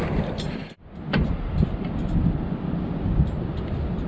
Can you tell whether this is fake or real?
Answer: real